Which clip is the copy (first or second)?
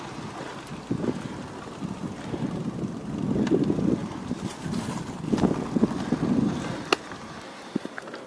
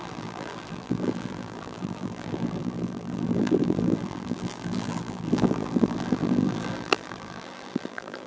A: second